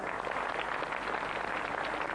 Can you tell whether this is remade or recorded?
recorded